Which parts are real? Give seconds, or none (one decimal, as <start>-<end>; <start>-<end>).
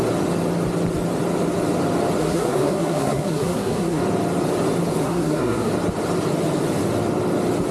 0.0-2.2; 4.0-5.0; 5.7-7.7